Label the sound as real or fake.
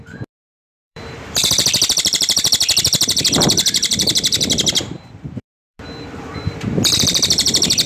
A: fake